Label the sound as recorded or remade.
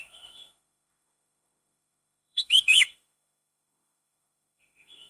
remade